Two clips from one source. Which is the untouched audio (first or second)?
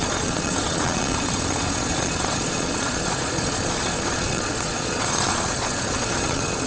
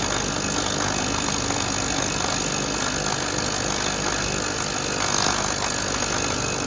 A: second